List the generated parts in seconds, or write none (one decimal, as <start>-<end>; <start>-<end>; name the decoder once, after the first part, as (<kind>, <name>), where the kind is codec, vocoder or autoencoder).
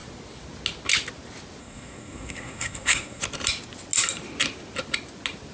1.6-3.2 (codec, SNAC)